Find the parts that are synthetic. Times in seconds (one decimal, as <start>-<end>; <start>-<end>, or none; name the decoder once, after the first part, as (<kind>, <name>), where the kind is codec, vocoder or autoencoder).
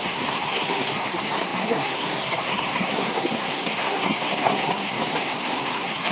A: 0.0-6.1 (codec, SNAC)